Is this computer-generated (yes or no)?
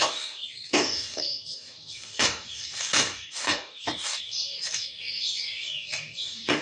yes